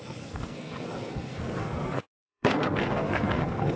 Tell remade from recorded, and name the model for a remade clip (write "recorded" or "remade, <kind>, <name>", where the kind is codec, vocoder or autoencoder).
remade, codec, SNAC